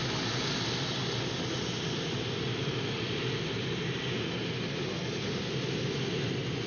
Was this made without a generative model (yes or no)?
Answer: yes